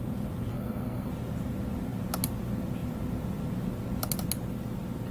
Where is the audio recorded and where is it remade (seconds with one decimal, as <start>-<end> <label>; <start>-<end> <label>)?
0.0-0.5 recorded; 0.5-1.1 remade; 1.1-5.1 recorded

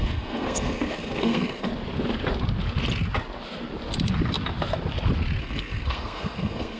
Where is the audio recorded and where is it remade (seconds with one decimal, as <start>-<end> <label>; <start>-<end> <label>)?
0.0-1.7 remade; 1.7-5.4 recorded; 5.4-6.8 remade

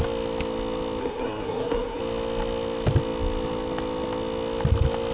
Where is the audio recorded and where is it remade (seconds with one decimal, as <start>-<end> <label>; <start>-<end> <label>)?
0.0-1.0 recorded; 1.0-2.0 remade; 2.0-5.1 recorded

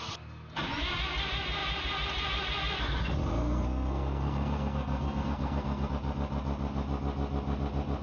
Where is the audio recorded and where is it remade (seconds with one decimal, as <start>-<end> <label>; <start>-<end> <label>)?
0.0-3.4 recorded; 3.4-5.9 remade; 5.9-8.0 recorded

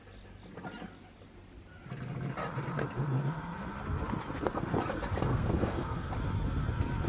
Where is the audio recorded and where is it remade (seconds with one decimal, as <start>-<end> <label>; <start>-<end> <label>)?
0.0-5.3 recorded; 5.3-6.1 remade; 6.1-7.1 recorded